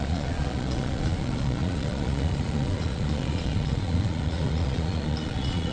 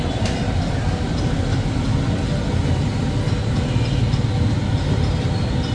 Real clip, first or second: second